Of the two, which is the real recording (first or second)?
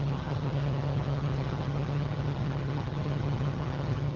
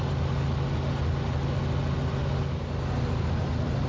second